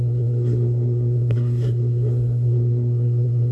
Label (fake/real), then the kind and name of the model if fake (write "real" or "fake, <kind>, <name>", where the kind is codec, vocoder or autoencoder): fake, codec, SNAC